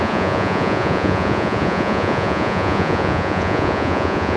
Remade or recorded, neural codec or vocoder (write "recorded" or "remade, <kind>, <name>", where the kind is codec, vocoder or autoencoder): remade, vocoder, Vocos